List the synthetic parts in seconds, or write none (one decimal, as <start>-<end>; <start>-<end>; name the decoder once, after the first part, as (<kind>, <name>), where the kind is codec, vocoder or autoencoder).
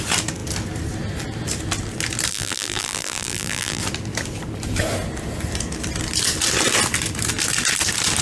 2.3-3.8 (vocoder, BigVGAN v2)